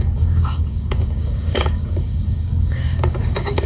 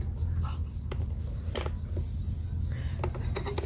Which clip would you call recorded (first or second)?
second